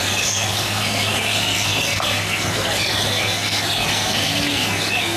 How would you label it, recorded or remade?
remade